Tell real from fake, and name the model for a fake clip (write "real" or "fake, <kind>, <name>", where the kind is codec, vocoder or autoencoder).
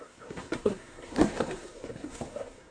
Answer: fake, codec, SNAC